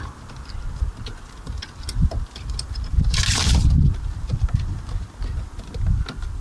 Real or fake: real